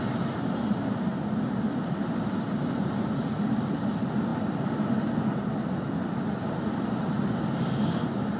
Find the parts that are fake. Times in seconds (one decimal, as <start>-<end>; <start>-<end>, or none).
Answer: none